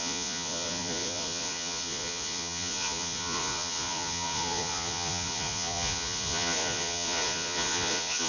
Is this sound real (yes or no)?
no